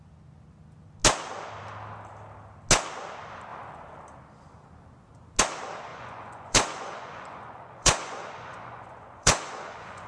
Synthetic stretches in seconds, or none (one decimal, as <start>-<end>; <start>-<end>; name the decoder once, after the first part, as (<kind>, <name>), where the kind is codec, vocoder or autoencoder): 5.9-10.1 (vocoder, Vocos)